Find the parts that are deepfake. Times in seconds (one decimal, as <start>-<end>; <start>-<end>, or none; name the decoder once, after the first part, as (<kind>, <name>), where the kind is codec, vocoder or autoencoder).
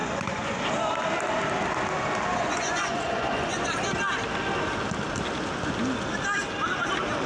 0.0-0.6 (vocoder, Vocos); 2.3-3.7